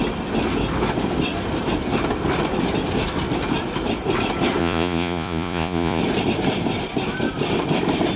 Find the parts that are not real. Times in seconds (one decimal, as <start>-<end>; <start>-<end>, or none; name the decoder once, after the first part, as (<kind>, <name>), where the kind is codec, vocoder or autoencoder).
4.6-6.0 (vocoder, Vocos)